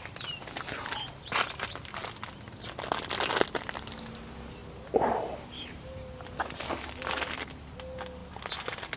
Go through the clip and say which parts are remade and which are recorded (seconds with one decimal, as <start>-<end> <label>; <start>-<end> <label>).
0.0-9.0 recorded